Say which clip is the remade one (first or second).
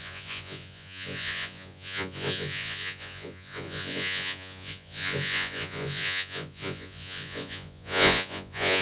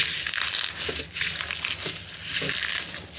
first